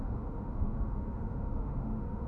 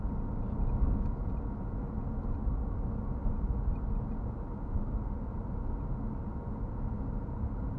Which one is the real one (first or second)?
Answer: second